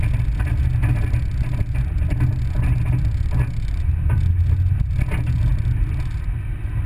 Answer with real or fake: real